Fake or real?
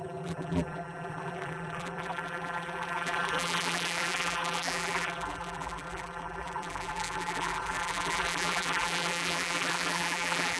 fake